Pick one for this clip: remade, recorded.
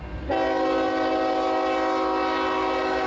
recorded